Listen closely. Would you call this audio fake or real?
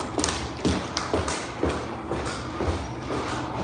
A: real